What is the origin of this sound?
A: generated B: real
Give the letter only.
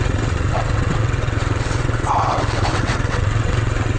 A